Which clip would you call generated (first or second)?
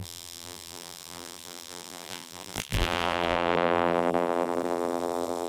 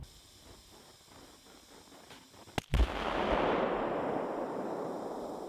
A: first